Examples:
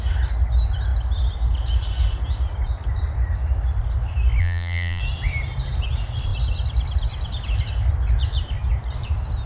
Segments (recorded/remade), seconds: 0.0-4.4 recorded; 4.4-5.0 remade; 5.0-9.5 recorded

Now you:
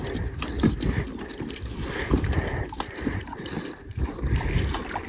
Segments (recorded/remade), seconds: 0.0-1.3 recorded; 1.3-4.4 remade; 4.4-5.1 recorded